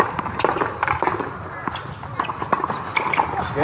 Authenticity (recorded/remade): recorded